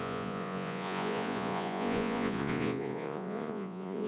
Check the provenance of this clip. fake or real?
fake